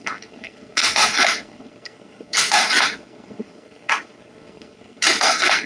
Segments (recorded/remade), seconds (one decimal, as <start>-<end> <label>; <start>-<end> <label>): 0.0-5.7 remade